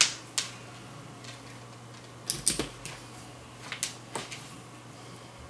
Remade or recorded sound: recorded